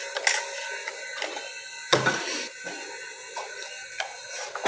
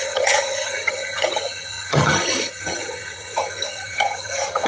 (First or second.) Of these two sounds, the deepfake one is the second